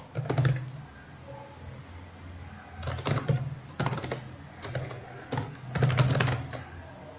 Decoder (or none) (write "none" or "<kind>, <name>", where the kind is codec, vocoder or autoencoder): none